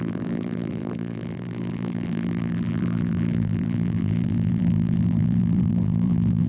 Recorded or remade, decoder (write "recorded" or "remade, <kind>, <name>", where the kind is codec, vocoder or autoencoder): remade, vocoder, BigVGAN v2